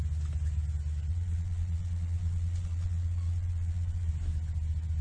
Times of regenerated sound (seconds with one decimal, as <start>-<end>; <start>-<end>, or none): 1.1-4.1